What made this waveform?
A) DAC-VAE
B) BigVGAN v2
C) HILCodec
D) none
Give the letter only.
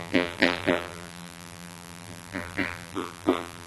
B